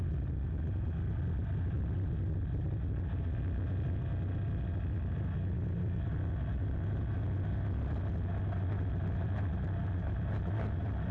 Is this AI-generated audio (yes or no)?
no